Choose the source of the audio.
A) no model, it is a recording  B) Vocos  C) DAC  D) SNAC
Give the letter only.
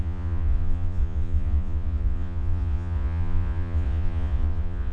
B